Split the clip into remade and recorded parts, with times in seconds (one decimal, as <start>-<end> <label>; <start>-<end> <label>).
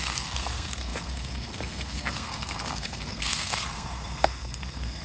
0.0-5.0 remade